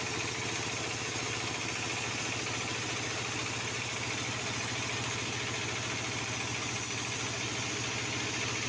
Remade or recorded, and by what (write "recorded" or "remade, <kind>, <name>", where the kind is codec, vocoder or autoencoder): recorded